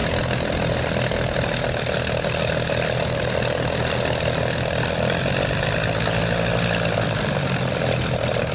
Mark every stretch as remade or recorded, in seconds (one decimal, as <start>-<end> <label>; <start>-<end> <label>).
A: 0.0-8.5 recorded